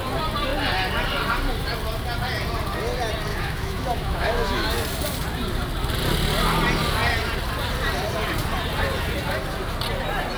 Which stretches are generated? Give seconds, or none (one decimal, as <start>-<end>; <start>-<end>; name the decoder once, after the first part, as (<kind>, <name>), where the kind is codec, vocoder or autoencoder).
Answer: 3.3-4.8 (autoencoder, DAC-VAE)

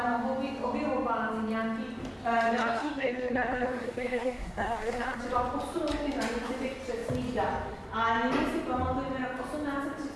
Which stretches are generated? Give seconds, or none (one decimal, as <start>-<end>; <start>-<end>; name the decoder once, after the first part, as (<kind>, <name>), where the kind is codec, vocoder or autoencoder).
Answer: 2.6-5.2 (codec, SNAC)